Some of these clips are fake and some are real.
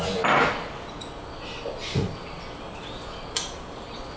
real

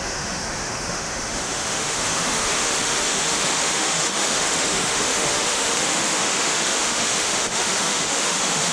fake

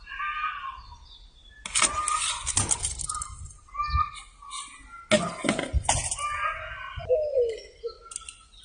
real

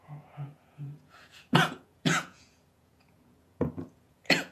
fake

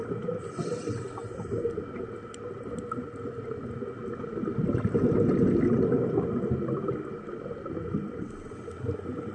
real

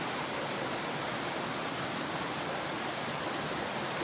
real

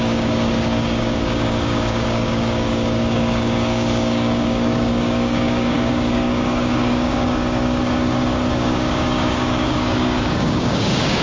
fake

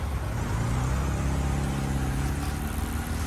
real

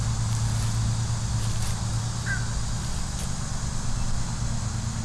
real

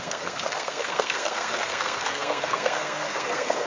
fake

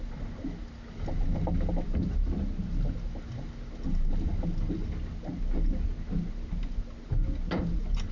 real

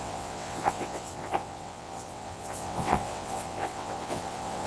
fake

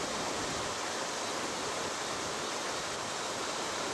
real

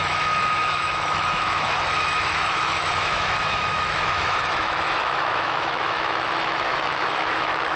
fake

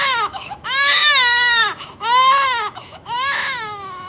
fake